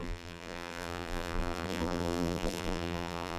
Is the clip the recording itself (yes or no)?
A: no